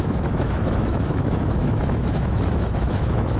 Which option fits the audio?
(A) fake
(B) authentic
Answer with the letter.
A